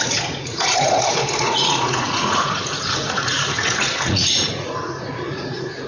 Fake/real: fake